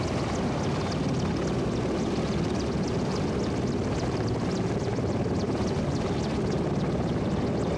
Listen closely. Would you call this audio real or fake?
real